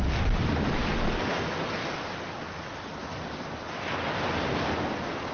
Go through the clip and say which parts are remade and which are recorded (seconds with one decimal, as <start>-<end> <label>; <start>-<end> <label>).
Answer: 0.0-5.3 recorded